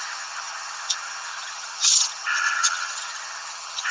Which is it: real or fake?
fake